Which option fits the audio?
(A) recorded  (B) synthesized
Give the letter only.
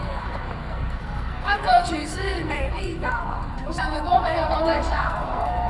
B